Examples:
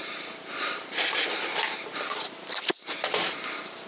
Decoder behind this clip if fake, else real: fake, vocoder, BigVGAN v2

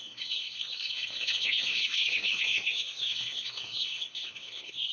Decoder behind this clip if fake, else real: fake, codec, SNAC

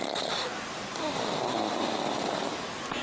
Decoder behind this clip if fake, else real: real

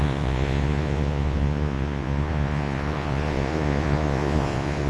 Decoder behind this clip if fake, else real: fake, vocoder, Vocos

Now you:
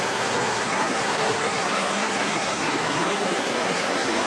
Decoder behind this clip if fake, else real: fake, codec, SNAC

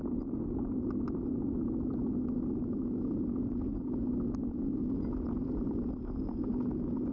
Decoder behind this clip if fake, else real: real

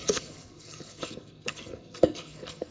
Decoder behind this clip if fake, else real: fake, codec, SNAC